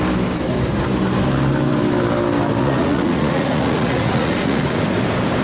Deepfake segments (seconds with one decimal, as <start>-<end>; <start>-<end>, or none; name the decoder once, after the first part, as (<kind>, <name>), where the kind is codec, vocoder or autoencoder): 2.6-4.8 (vocoder, Vocos)